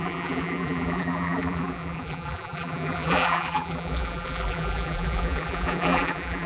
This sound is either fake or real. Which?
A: fake